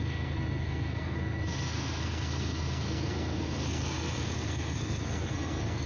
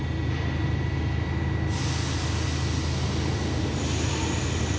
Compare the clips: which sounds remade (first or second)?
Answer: first